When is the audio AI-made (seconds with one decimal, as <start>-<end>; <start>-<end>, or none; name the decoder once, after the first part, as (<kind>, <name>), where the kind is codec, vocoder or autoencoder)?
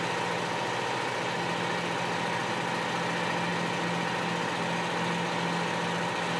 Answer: none